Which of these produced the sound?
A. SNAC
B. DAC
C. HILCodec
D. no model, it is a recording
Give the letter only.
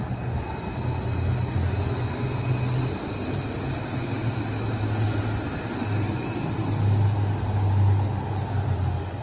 D